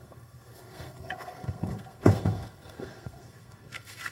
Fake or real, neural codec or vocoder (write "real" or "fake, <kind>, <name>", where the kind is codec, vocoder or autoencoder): fake, codec, SNAC